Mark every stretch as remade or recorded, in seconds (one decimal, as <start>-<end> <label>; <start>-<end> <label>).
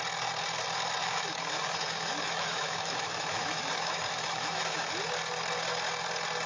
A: 0.0-1.0 recorded; 1.0-4.9 remade; 4.9-6.5 recorded